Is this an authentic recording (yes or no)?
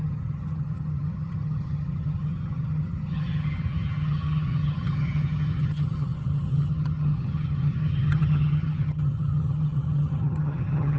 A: no